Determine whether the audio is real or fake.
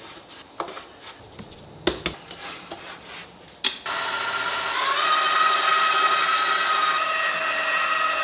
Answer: real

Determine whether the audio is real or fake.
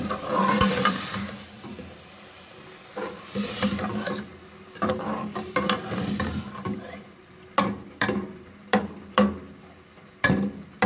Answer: fake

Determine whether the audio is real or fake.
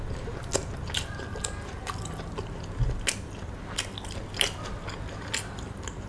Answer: real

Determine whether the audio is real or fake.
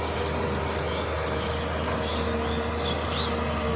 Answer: real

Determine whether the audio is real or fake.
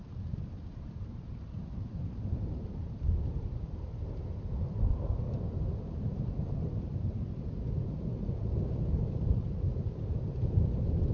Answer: fake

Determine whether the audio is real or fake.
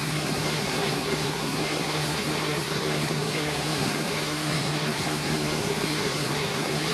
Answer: fake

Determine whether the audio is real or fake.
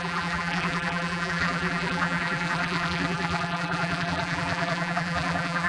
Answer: fake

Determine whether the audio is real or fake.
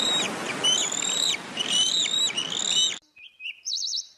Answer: real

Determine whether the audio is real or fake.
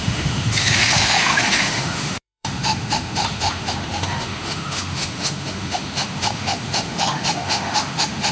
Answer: fake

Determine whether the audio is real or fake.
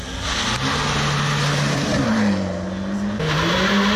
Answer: real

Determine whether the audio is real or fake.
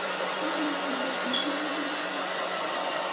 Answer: fake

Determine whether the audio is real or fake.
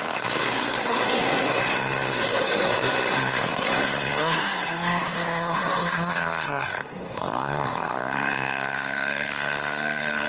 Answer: fake